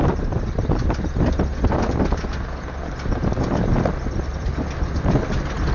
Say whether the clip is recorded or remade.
recorded